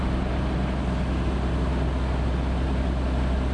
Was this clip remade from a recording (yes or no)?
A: no